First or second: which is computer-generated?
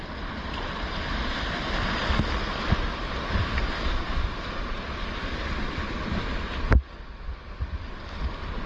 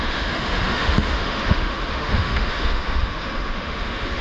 second